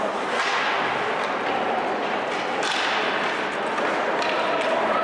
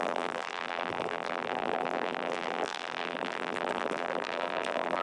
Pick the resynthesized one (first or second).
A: second